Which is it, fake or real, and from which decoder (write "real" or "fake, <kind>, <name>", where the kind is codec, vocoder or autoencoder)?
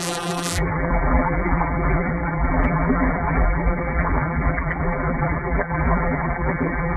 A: fake, vocoder, BigVGAN v2